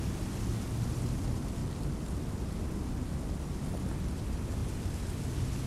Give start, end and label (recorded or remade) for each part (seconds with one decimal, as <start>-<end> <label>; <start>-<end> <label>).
0.0-5.7 recorded